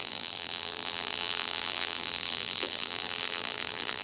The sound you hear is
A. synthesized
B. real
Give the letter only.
A